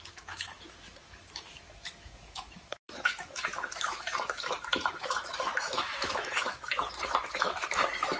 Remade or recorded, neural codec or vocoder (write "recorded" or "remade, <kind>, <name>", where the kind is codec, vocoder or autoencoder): remade, autoencoder, DAC-VAE